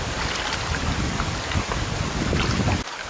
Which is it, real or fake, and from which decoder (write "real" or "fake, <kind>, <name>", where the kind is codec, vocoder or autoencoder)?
real